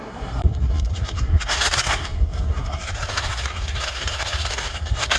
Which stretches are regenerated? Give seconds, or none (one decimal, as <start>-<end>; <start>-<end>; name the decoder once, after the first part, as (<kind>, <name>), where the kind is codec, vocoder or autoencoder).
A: 0.0-5.2 (codec, SNAC)